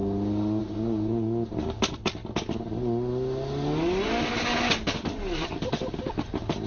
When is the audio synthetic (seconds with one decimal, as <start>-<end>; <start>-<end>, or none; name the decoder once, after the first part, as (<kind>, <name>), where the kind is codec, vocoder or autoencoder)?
none